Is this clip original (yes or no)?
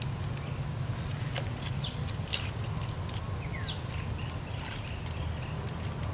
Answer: yes